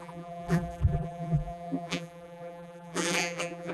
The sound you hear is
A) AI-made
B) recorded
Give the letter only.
A